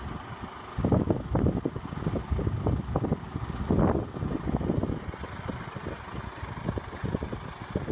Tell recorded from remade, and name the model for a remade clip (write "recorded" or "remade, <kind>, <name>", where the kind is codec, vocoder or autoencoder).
recorded